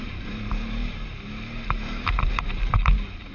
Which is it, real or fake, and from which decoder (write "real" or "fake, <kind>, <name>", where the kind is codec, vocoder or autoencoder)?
fake, vocoder, BigVGAN v2